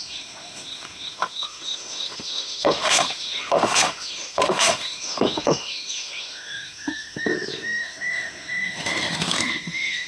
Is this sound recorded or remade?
remade